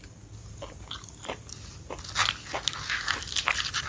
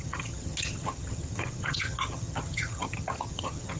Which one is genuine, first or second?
first